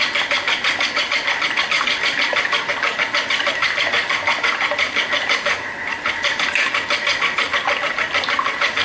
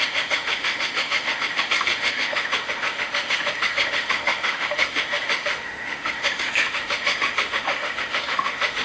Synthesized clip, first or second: second